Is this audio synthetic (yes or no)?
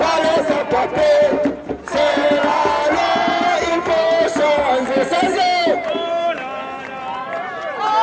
yes